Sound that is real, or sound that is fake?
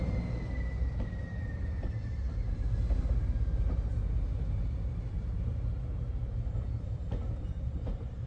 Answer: fake